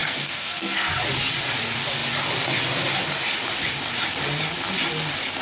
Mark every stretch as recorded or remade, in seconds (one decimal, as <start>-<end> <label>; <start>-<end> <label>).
0.0-0.9 remade; 0.9-5.4 recorded